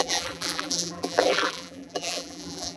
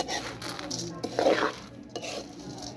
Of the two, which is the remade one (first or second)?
first